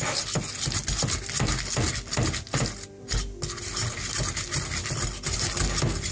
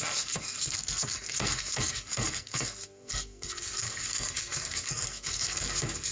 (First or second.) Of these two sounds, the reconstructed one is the second